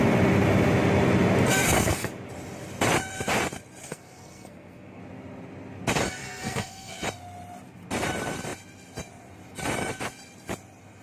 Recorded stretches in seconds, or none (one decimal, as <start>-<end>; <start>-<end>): 0.0-1.5; 2.1-3.8; 5.0-6.2; 6.9-11.0